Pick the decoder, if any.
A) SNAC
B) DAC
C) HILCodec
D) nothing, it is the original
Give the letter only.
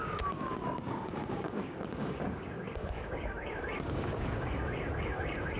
B